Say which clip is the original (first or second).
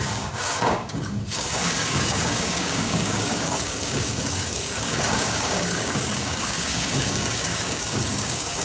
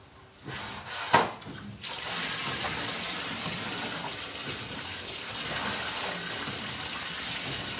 second